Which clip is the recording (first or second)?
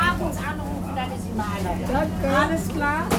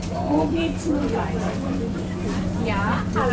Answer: first